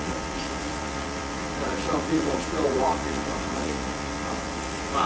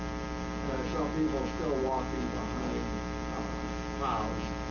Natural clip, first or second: second